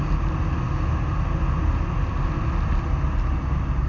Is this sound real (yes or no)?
yes